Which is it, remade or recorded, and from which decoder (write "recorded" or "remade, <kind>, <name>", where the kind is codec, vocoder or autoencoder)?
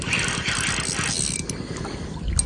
recorded